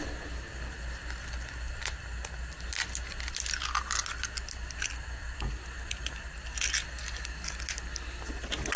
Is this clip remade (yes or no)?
no